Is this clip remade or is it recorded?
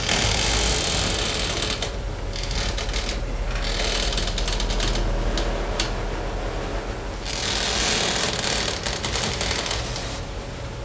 recorded